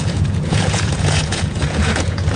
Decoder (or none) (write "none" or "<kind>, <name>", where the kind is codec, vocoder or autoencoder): vocoder, Vocos